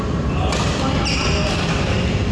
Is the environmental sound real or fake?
real